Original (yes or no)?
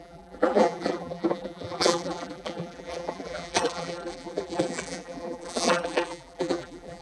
no